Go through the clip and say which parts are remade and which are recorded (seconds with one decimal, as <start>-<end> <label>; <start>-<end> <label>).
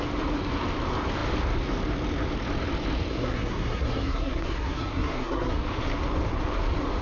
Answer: 0.0-3.1 recorded; 3.1-5.6 remade; 5.6-7.0 recorded